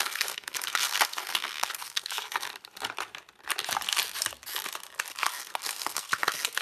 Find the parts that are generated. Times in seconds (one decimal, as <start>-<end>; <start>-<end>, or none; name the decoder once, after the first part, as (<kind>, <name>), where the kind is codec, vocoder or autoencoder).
0.0-2.5 (codec, SNAC); 5.1-6.6